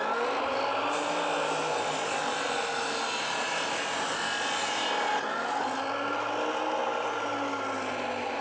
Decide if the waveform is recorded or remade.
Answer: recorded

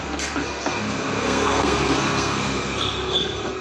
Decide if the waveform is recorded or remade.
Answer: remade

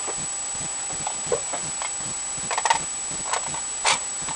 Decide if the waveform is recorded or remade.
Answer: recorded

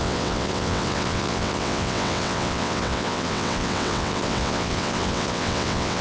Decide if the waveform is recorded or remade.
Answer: remade